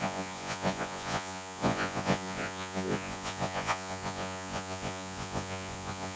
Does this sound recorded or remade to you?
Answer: remade